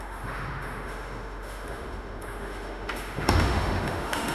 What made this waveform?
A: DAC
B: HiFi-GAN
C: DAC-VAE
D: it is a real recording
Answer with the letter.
C